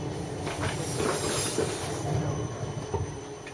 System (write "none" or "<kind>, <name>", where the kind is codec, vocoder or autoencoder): none